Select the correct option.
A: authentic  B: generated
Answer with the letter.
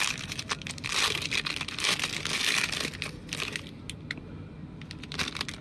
A